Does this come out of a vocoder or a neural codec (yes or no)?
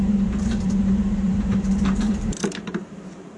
yes